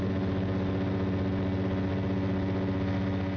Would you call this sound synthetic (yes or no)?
no